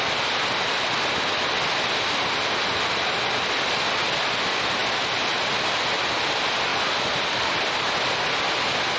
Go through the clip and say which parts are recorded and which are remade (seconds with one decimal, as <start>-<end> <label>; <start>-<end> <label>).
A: 0.0-6.7 recorded; 6.7-7.9 remade; 7.9-9.0 recorded